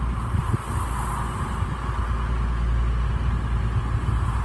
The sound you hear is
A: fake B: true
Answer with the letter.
B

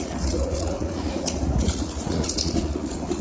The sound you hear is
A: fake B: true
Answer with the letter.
A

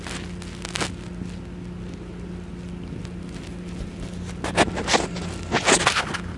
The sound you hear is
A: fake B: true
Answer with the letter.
B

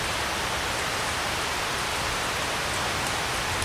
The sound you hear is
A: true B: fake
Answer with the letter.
A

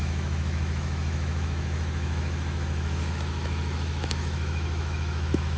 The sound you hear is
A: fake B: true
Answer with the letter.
A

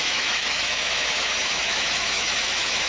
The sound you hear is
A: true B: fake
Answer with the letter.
B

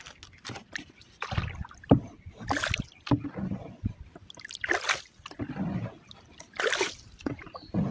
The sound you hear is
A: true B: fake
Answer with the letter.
A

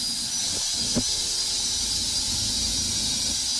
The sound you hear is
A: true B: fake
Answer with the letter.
A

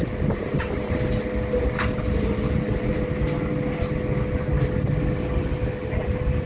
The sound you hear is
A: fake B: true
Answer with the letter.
B